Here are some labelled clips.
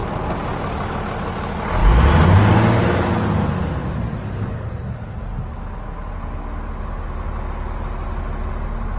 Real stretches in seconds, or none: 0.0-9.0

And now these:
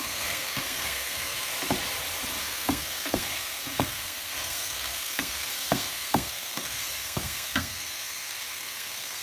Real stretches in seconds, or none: 1.5-2.4

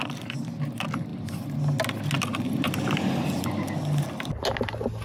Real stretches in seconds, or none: 0.0-5.0

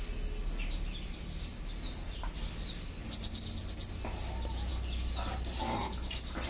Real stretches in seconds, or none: 0.0-6.5

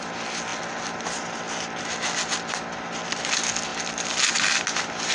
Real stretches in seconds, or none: 0.0-5.1

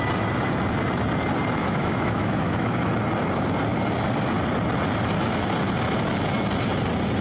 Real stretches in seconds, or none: 0.0-1.6; 2.8-7.2

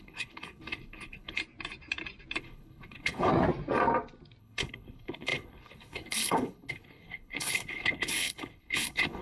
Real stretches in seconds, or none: 1.4-2.4; 3.3-4.4